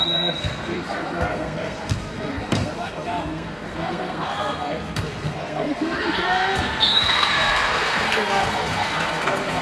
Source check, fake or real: fake